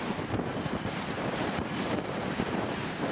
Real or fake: real